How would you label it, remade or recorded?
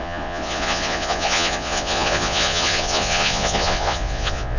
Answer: remade